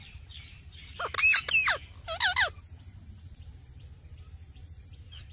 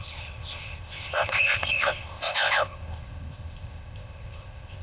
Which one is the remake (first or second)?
second